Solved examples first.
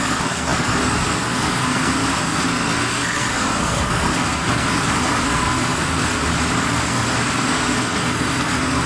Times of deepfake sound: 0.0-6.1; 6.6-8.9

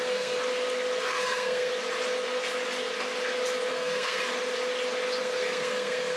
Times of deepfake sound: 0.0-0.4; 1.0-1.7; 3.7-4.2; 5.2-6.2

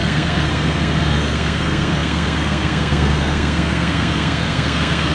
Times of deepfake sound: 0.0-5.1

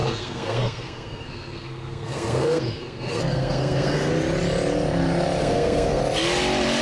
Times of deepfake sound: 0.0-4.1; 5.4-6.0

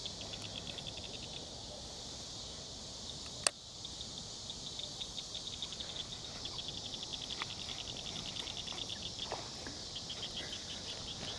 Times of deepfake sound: none

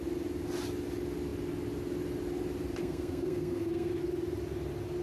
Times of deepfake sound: 2.8-3.9

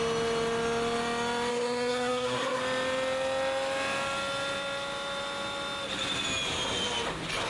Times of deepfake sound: 1.5-2.6

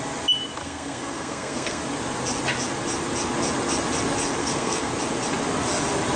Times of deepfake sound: 0.6-1.8; 4.4-4.9